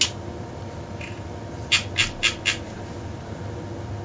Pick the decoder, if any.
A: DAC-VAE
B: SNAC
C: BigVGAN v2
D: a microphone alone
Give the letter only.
D